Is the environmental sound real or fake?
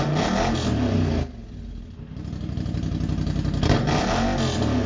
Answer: real